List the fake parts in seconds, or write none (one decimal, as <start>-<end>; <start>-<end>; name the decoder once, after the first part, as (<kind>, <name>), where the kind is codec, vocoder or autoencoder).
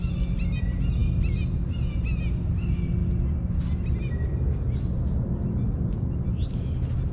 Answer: none